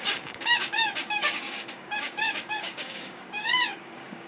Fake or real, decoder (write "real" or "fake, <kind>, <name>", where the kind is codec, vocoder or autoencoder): fake, codec, DAC